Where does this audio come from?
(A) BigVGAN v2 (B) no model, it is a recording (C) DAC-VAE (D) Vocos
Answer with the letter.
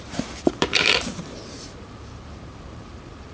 A